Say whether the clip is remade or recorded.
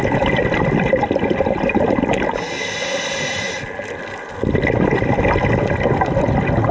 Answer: recorded